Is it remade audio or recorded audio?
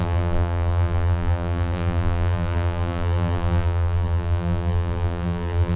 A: remade